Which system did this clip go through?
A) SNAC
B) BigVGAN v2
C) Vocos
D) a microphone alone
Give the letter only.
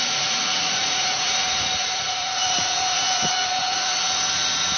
C